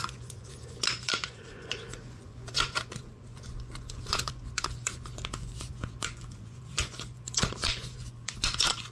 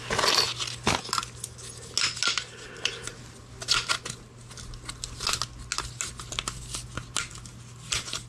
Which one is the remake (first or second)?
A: first